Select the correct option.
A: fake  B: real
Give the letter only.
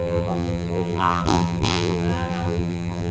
A